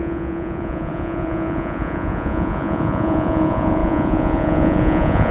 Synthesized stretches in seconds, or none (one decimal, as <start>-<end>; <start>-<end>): 0.0-5.3